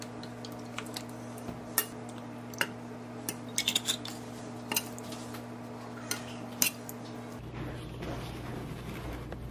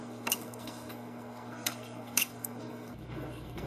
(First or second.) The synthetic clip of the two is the second